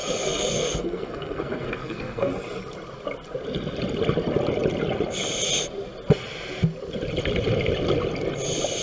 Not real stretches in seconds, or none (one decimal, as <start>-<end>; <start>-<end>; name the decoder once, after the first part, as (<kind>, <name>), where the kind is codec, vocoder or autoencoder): 0.0-2.3 (codec, SNAC)